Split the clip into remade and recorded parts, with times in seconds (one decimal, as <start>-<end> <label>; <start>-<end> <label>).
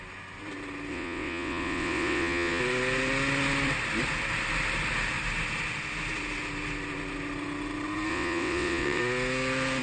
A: 0.0-0.9 recorded; 0.9-2.6 remade; 2.6-8.1 recorded; 8.1-9.0 remade; 9.0-9.8 recorded